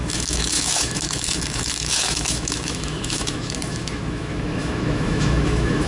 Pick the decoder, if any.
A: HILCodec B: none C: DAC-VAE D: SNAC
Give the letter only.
C